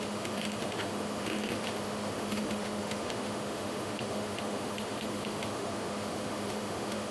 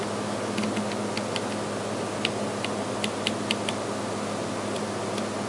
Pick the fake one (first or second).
first